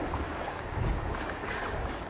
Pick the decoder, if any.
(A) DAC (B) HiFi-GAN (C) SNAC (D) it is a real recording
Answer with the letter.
A